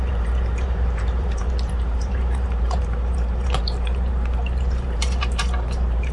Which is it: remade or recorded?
remade